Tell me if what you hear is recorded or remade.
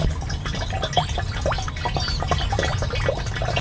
recorded